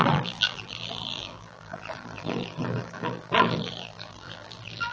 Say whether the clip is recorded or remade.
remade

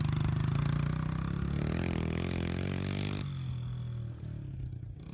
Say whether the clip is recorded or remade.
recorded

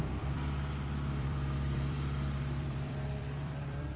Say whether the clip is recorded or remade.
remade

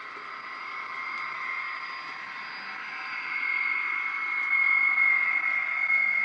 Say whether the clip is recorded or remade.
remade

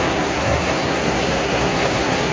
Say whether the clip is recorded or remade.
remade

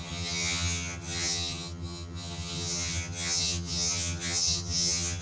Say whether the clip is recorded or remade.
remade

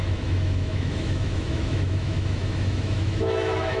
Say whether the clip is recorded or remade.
remade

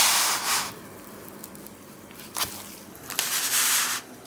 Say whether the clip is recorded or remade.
recorded